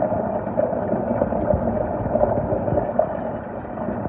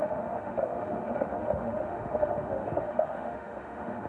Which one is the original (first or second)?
first